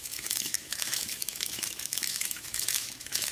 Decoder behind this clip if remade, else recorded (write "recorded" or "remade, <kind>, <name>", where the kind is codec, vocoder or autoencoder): remade, autoencoder, DAC-VAE